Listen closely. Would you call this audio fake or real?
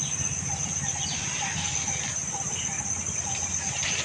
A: real